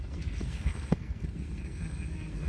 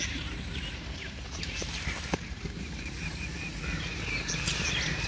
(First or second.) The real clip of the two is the second